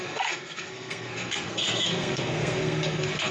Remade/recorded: remade